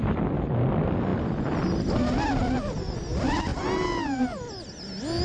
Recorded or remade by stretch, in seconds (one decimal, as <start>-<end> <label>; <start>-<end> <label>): 0.0-5.2 recorded